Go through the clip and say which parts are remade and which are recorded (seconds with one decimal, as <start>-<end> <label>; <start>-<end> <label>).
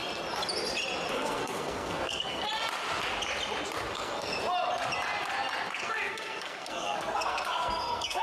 0.0-1.1 recorded; 1.1-2.5 remade; 2.5-3.9 recorded; 3.9-4.3 remade; 4.3-5.7 recorded; 5.7-8.2 remade